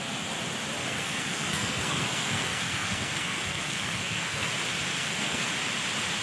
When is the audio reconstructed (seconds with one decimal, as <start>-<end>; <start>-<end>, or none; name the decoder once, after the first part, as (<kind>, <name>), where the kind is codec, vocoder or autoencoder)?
0.8-4.5 (codec, SNAC); 4.9-5.5